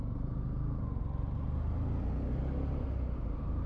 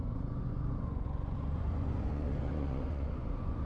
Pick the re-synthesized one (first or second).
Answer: second